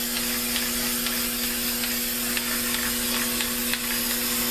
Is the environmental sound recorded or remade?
recorded